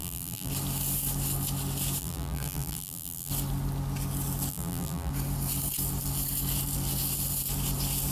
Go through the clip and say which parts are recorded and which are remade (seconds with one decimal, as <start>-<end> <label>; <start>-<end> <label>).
0.0-0.5 remade; 0.5-2.0 recorded; 2.0-3.3 remade; 3.3-4.5 recorded; 4.5-5.1 remade; 5.1-8.1 recorded